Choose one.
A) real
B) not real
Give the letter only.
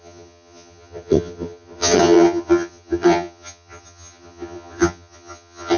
B